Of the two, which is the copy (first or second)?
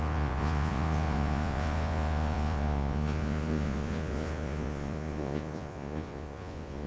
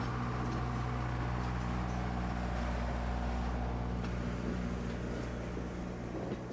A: first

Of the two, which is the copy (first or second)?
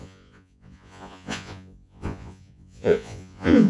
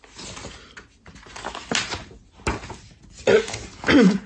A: first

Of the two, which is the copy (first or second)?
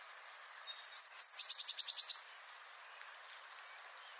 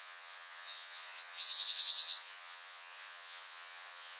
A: second